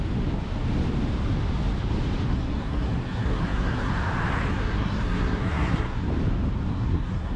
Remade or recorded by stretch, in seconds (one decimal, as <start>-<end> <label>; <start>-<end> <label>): 0.0-2.3 recorded; 2.3-3.9 remade; 3.9-4.5 recorded; 4.5-6.1 remade; 6.1-6.7 recorded; 6.7-7.4 remade